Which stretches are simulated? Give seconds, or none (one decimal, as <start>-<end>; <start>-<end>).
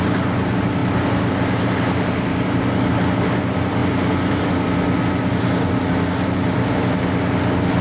none